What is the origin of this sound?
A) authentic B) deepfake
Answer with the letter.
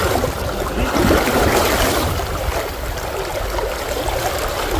A